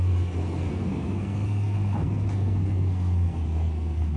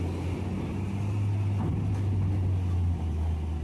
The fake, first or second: first